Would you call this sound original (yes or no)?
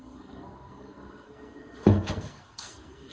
no